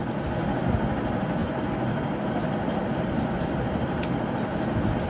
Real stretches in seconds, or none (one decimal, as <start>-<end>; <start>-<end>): 0.0-1.4; 4.1-5.1